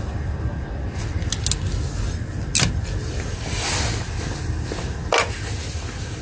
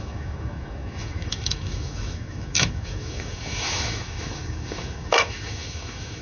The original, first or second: first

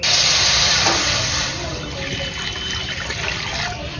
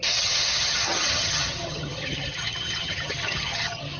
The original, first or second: first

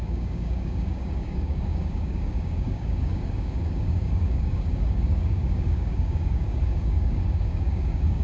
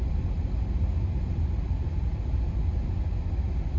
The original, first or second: second